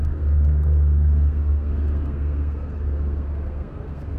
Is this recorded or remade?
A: remade